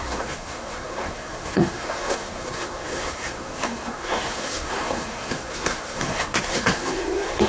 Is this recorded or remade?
remade